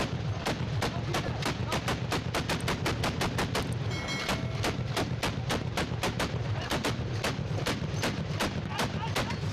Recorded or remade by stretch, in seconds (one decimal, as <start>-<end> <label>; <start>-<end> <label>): 0.0-9.5 recorded